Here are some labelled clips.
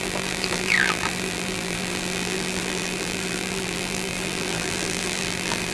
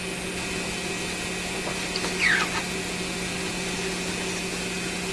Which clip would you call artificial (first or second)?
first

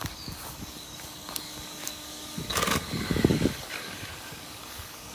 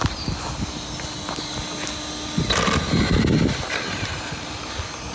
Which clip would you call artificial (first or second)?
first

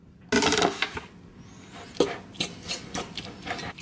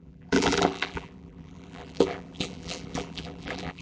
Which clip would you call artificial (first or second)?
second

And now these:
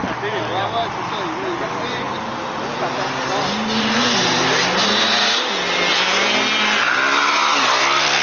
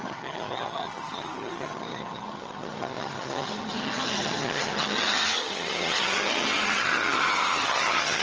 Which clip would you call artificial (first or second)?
second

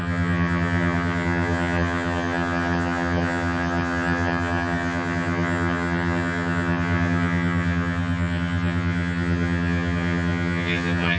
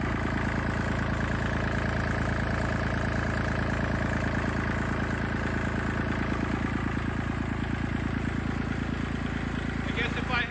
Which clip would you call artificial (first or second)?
first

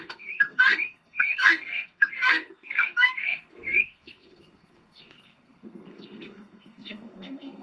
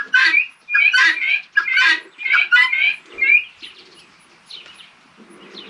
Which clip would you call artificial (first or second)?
first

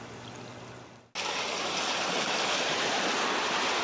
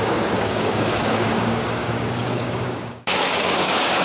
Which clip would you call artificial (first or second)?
second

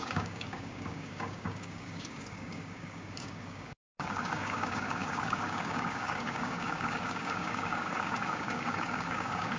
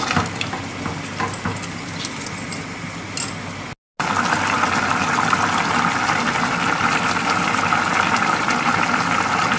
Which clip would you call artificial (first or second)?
first